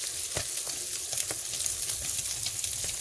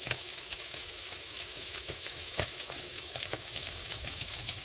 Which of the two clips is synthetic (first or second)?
second